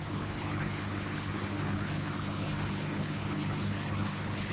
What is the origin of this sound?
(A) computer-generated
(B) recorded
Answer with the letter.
A